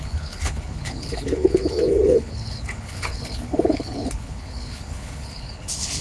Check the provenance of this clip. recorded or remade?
remade